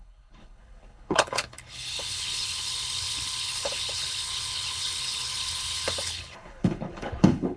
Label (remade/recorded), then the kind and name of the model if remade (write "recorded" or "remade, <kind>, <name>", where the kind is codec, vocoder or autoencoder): remade, codec, HILCodec